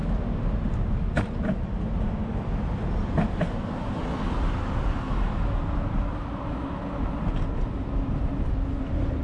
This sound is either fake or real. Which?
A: real